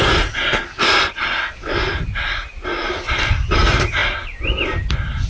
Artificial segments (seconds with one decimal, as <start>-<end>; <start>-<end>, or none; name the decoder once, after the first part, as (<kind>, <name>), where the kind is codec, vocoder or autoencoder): none

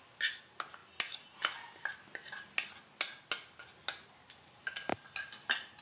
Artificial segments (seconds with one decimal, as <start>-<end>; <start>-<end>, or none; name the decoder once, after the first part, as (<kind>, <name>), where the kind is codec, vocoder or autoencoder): none

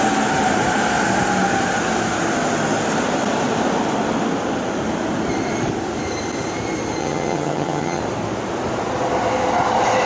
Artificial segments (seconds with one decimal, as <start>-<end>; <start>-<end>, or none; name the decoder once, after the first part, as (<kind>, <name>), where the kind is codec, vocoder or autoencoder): 7.0-8.0 (vocoder, HiFi-GAN)

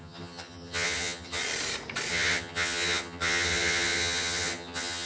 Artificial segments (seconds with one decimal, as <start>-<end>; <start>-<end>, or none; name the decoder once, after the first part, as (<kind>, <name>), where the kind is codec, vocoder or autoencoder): 0.0-1.4 (vocoder, HiFi-GAN); 2.1-5.1

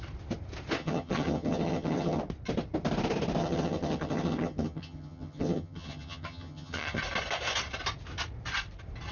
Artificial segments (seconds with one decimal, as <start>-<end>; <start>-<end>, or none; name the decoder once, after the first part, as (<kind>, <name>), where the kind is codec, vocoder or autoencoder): 0.8-2.2 (vocoder, HiFi-GAN); 3.4-7.0

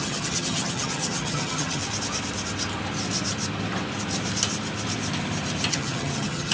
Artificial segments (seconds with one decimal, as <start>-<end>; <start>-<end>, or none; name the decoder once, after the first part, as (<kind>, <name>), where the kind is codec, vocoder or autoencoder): 0.0-1.8 (vocoder, HiFi-GAN); 5.7-6.5

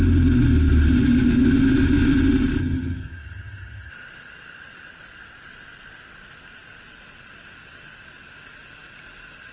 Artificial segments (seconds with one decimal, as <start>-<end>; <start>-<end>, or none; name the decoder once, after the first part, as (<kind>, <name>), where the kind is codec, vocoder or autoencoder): 2.6-3.9 (vocoder, HiFi-GAN)